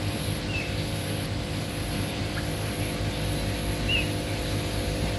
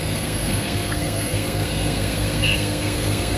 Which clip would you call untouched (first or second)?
first